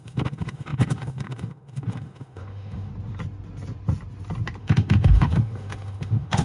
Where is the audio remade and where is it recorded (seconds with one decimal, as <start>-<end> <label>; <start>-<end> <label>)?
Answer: 0.0-2.9 remade; 2.9-4.6 recorded; 4.6-6.4 remade

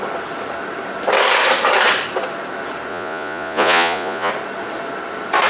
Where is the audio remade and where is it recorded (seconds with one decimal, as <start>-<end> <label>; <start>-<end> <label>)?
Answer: 0.0-2.9 recorded; 2.9-4.3 remade; 4.3-5.5 recorded

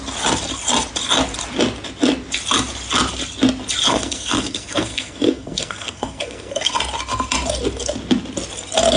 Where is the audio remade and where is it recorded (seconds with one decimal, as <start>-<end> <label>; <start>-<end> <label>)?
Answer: 0.0-3.9 recorded; 3.9-6.7 remade; 6.7-9.0 recorded

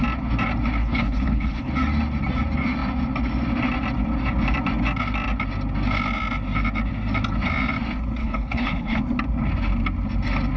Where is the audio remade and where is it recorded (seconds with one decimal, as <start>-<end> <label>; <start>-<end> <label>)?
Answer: 0.0-0.8 recorded; 0.8-1.7 remade; 1.7-8.2 recorded; 8.2-9.0 remade; 9.0-10.6 recorded

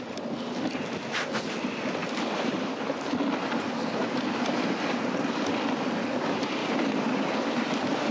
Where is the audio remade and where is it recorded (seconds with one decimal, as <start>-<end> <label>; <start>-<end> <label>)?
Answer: 0.0-2.0 recorded; 2.0-3.0 remade; 3.0-6.6 recorded; 6.6-8.1 remade

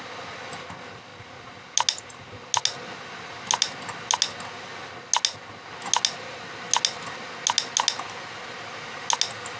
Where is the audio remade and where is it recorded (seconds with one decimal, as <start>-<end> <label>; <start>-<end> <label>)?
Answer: 0.0-9.6 recorded

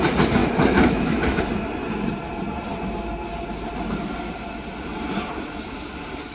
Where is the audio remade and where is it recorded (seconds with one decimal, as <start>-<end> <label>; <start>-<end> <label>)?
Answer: 0.0-0.4 recorded; 0.4-1.4 remade; 1.4-6.3 recorded